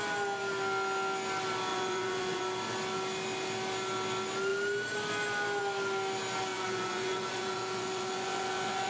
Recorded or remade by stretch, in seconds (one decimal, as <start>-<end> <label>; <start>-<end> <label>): 0.0-1.7 recorded; 1.7-2.4 remade; 2.4-6.5 recorded; 6.5-8.9 remade